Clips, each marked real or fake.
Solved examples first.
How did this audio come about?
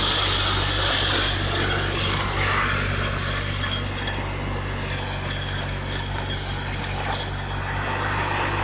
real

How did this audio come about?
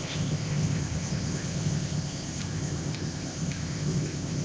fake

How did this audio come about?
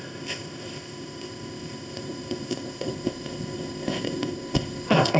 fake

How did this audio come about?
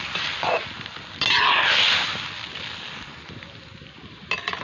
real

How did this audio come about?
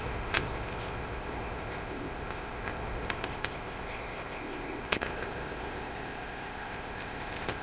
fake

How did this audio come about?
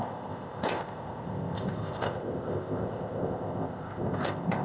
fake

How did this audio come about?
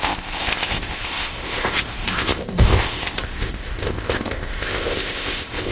fake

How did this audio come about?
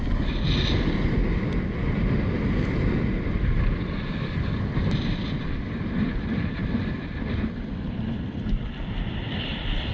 real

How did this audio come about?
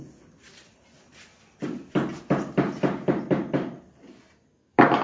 real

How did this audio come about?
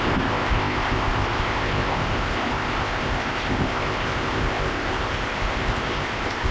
fake